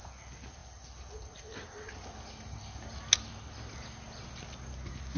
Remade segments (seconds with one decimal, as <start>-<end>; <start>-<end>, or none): none